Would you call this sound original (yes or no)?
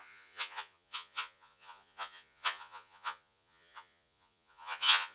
no